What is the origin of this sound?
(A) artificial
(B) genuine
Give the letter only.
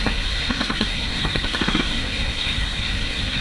A